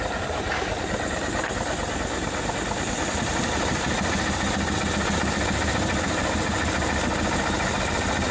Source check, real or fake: real